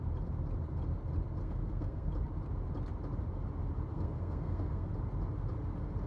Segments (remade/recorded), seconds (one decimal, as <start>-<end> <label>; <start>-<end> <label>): 0.0-1.4 recorded; 1.4-2.1 remade; 2.1-3.9 recorded; 3.9-4.9 remade; 4.9-6.1 recorded